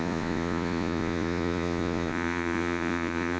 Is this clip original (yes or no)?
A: no